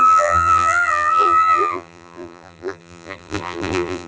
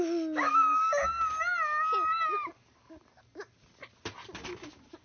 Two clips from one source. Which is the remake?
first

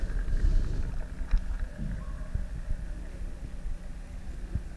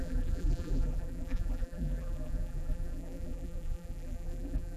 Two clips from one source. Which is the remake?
second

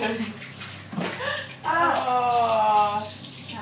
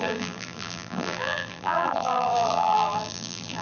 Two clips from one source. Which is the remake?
second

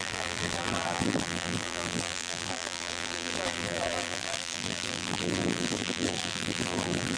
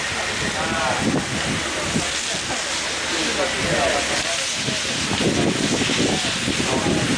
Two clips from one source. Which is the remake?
first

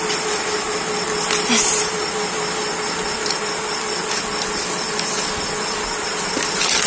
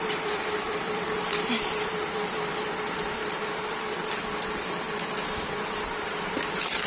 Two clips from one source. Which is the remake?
second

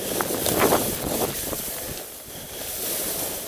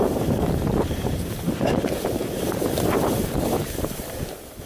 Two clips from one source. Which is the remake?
second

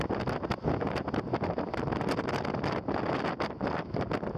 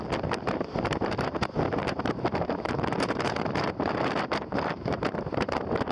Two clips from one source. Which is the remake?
second